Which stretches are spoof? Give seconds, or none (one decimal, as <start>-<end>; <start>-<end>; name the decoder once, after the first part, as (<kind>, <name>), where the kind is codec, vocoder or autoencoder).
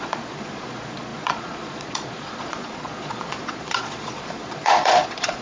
0.0-5.4 (vocoder, Vocos)